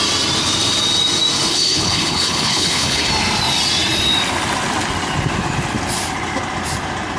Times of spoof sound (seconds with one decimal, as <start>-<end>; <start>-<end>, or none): 1.5-3.1